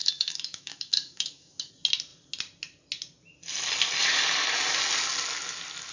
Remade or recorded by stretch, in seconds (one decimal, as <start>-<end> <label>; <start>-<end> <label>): 0.0-1.7 remade; 1.7-5.9 recorded